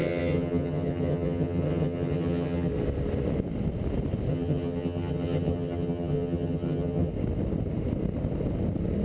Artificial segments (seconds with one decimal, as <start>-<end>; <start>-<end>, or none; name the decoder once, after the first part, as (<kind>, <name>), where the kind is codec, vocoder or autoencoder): 0.0-2.7 (vocoder, HiFi-GAN); 4.3-7.1

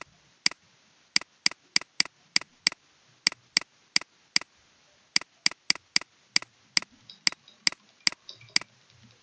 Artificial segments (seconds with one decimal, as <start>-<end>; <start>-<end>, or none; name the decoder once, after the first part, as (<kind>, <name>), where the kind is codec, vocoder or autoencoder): none

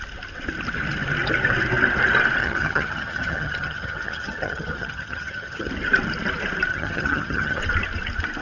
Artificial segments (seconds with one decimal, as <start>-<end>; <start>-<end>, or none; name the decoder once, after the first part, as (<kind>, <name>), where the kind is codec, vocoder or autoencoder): 2.4-5.7 (vocoder, HiFi-GAN); 6.7-7.6

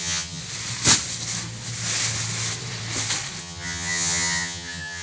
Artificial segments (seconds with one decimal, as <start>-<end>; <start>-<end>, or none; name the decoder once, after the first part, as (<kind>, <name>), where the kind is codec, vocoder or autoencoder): 0.0-0.4 (vocoder, HiFi-GAN); 3.4-5.0